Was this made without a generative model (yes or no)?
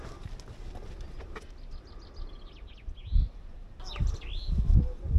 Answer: yes